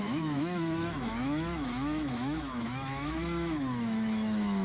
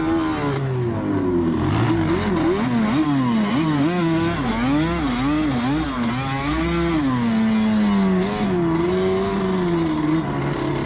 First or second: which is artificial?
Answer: first